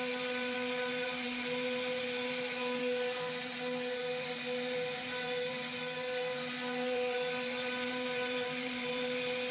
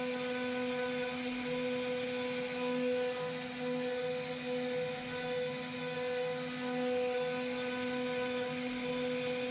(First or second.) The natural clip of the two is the second